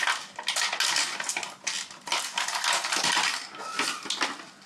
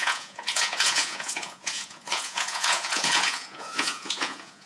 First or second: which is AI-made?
second